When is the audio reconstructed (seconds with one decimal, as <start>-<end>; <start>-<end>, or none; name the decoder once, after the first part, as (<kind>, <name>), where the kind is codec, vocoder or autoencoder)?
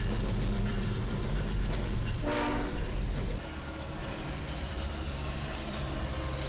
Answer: 0.7-3.3 (vocoder, BigVGAN v2); 4.0-6.0